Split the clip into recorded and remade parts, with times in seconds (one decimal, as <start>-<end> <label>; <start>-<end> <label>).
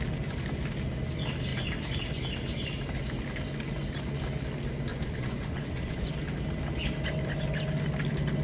0.0-4.9 recorded; 4.9-6.1 remade; 6.1-8.4 recorded